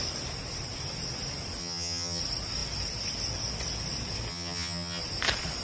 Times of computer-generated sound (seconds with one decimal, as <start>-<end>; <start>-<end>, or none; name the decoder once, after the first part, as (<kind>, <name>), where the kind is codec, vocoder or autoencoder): 1.6-2.2 (vocoder, HiFi-GAN); 4.3-5.0